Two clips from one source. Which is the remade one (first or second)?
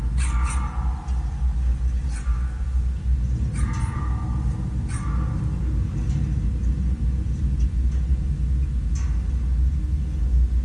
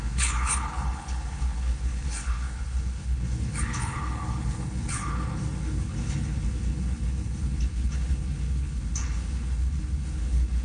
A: second